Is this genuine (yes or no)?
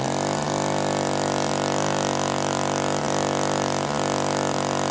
yes